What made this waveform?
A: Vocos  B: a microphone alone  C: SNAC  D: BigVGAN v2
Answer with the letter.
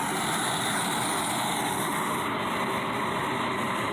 B